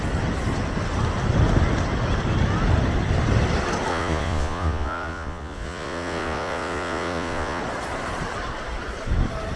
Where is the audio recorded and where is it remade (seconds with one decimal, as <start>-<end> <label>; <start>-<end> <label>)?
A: 0.0-3.9 recorded; 3.9-7.6 remade; 7.6-9.6 recorded